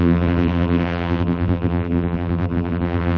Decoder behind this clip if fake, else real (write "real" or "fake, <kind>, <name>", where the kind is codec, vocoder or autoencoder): fake, vocoder, BigVGAN v2